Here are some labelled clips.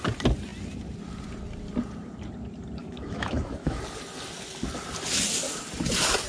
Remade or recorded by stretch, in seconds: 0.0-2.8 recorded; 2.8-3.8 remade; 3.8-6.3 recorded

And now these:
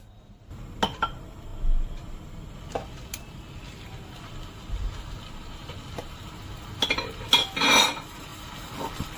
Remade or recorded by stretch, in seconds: 0.0-9.2 recorded

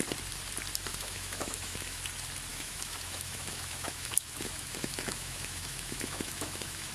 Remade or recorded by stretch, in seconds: 0.0-0.9 recorded; 0.9-2.0 remade; 2.0-2.5 recorded; 2.5-6.9 remade

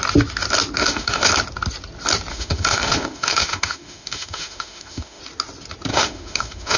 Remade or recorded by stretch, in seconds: 0.0-0.8 recorded; 0.8-1.3 remade; 1.3-2.3 recorded; 2.3-5.2 remade; 5.2-5.9 recorded; 5.9-6.8 remade

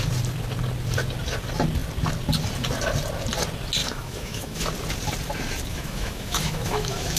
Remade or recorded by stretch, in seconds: 0.0-3.8 recorded; 3.8-4.6 remade; 4.6-5.7 recorded; 5.7-7.2 remade

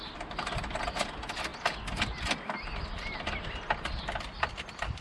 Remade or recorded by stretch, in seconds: 0.0-5.0 recorded

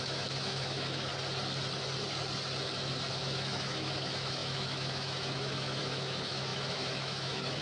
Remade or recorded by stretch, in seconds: 0.0-1.1 remade; 1.1-3.1 recorded; 3.1-7.6 remade